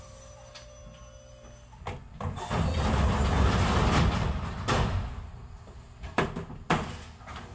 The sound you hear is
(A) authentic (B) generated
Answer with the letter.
A